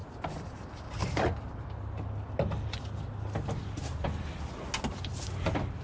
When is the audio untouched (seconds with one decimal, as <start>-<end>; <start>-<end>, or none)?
0.0-5.8